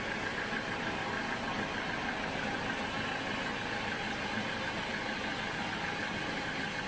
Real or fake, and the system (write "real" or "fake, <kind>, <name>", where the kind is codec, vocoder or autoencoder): real